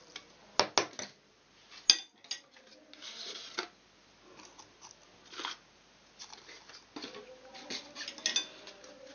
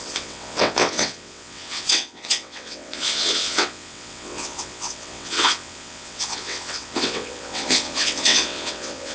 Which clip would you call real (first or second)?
first